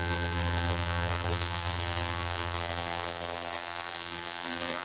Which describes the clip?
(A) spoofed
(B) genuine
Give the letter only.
A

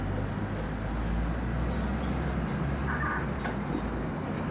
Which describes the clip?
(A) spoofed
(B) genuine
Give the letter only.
B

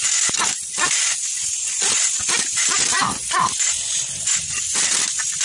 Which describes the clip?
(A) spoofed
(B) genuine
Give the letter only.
B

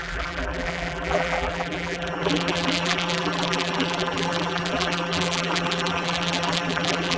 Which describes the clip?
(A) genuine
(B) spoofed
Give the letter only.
B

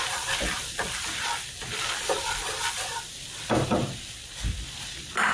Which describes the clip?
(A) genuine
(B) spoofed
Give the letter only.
B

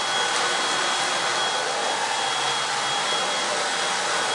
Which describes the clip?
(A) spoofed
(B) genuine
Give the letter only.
B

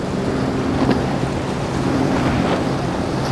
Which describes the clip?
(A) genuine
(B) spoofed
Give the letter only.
B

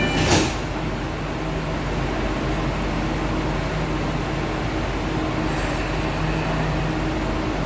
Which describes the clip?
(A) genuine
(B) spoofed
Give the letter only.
A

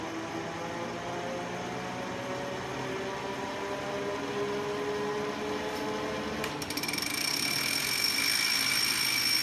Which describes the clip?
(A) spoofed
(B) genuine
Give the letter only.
B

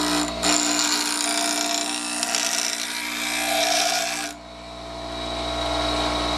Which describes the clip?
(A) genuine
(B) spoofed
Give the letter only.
A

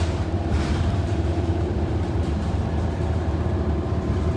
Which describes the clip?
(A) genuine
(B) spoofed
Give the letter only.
B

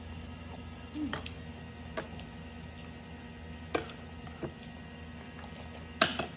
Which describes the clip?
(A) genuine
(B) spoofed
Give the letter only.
A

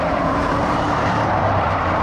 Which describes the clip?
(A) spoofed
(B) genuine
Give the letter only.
A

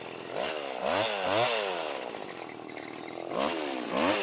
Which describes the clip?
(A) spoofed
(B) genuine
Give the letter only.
B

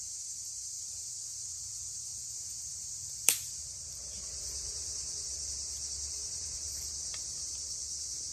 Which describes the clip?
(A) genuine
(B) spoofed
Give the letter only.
B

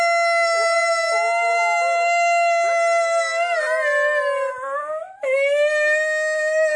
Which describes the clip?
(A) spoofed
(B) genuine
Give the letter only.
B